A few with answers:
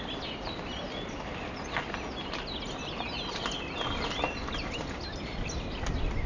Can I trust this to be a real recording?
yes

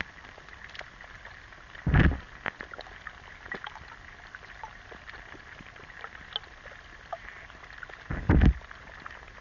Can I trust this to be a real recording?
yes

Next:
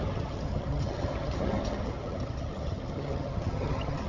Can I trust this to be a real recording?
no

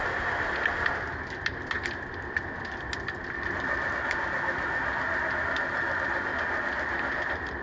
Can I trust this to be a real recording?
yes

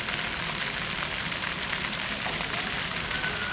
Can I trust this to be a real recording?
yes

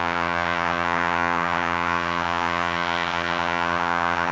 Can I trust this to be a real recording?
no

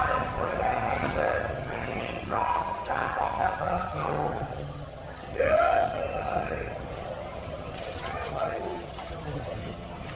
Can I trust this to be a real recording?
no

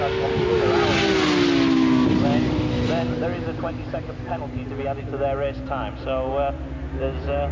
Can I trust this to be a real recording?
yes